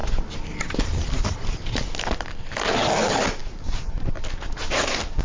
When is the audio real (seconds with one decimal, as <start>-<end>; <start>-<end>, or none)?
1.7-3.4; 4.1-5.2